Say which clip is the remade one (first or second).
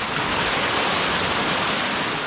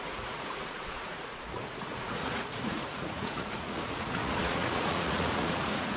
second